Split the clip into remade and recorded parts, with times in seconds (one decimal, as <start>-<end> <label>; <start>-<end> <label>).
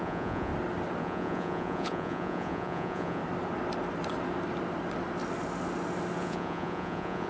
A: 0.0-0.5 remade; 0.5-1.0 recorded; 1.0-3.2 remade; 3.2-6.2 recorded; 6.2-7.3 remade